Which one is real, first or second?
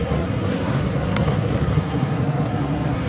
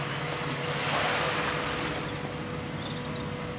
second